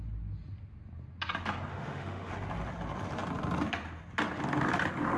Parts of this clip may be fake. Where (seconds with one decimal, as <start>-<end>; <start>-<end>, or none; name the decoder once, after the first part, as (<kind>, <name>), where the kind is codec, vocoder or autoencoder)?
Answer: 1.7-2.3 (autoencoder, DAC-VAE)